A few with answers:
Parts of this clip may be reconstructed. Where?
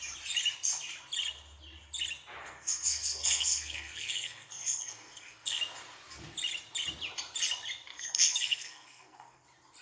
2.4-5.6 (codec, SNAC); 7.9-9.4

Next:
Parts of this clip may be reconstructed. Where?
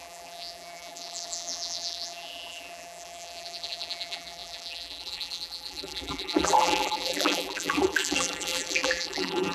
0.0-9.5 (vocoder, BigVGAN v2)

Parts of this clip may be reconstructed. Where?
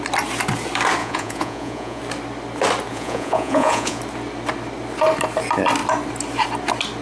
1.0-2.0 (vocoder, Vocos); 2.9-4.0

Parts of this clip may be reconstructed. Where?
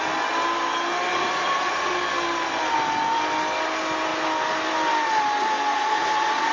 1.1-1.9 (vocoder, Vocos); 5.7-6.5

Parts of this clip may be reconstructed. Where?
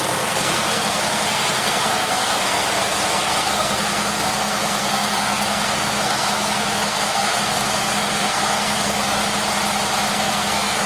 0.0-9.2 (codec, SNAC); 10.1-10.9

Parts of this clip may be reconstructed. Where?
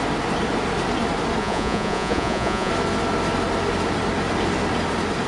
1.4-2.7 (vocoder, Vocos)